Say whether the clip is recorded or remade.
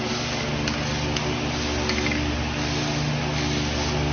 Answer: recorded